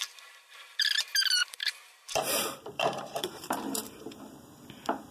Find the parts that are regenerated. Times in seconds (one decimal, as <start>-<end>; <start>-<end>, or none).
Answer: 1.4-4.0